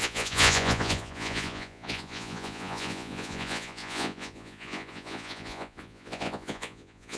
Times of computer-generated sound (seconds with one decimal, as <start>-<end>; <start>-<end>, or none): 0.0-7.2